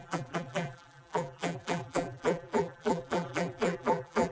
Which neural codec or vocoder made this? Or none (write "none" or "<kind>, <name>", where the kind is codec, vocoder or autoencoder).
vocoder, BigVGAN v2